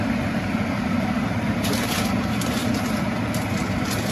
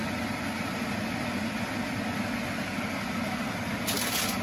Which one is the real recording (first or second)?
second